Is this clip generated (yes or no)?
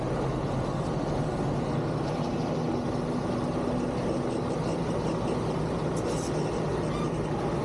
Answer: no